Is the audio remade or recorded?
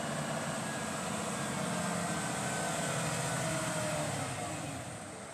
recorded